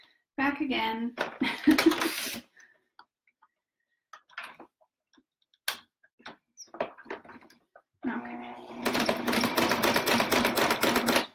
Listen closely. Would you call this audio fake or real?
real